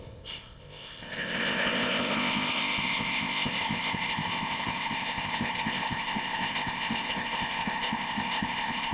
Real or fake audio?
fake